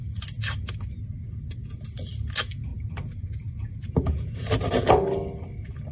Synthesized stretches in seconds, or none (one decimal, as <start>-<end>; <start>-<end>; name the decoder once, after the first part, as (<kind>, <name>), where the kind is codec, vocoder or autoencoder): 2.7-4.7 (vocoder, BigVGAN v2)